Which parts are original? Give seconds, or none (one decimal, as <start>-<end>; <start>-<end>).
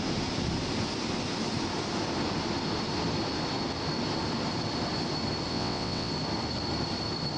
0.0-5.5; 6.1-7.4